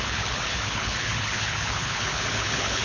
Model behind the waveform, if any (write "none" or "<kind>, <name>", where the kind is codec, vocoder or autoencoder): codec, HILCodec